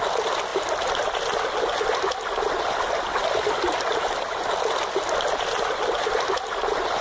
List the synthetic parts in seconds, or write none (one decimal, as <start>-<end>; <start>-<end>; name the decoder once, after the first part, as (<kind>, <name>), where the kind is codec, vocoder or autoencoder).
none